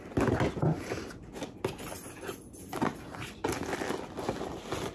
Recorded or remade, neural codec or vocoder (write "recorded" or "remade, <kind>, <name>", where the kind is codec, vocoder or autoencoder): recorded